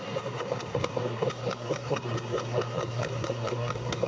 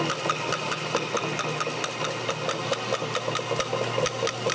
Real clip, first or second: second